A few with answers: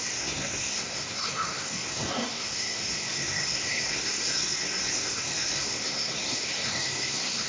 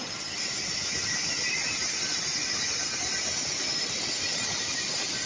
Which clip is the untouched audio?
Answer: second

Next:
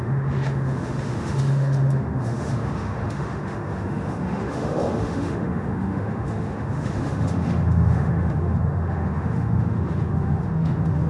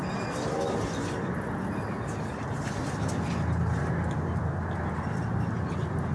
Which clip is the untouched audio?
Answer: second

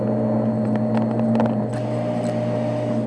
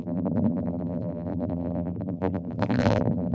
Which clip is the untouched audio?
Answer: first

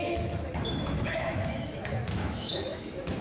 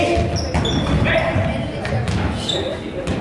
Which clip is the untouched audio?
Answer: second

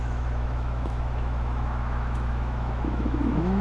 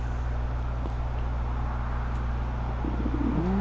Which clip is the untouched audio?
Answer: second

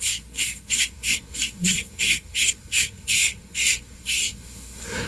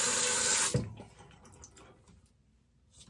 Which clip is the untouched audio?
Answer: second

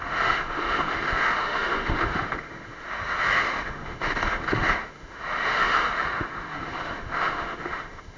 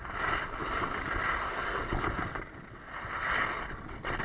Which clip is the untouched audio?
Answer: second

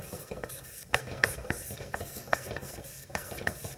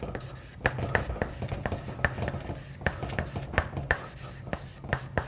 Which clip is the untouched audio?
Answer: second